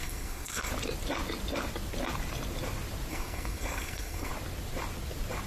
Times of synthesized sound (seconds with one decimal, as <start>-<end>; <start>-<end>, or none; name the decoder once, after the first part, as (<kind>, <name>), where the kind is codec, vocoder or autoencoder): 0.0-0.7 (codec, SNAC); 3.1-4.3